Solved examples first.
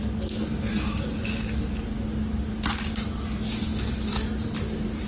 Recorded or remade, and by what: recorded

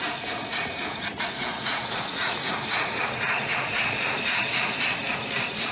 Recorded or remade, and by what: remade, vocoder, Vocos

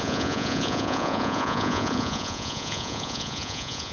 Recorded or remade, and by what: remade, vocoder, Vocos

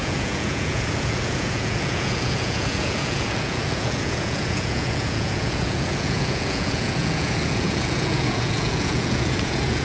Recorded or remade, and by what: remade, vocoder, Vocos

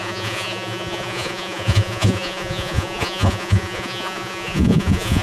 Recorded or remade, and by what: remade, vocoder, Vocos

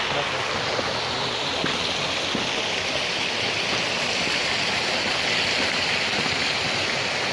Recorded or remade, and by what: recorded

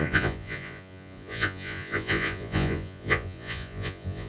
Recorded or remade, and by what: remade, vocoder, Vocos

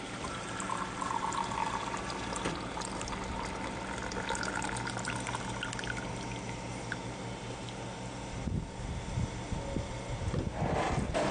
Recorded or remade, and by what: recorded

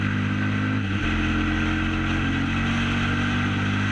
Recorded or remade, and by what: recorded